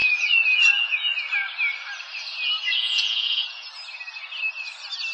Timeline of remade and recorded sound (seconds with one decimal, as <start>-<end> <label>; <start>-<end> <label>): 0.0-1.1 remade; 1.1-2.6 recorded; 2.6-3.7 remade; 3.7-5.1 recorded